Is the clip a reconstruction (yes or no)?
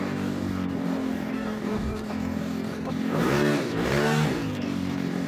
yes